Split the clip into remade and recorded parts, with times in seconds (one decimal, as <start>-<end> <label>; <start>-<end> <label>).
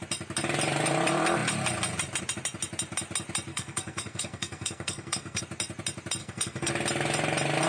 0.0-3.5 recorded; 3.5-5.4 remade; 5.4-6.2 recorded; 6.2-6.7 remade; 6.7-7.7 recorded